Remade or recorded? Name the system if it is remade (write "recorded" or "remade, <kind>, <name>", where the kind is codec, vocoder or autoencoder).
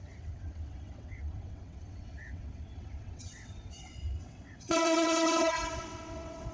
remade, vocoder, WaveNeXt